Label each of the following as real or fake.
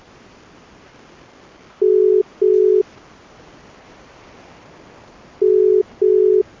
real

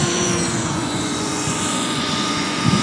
fake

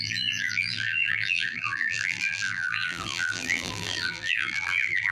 fake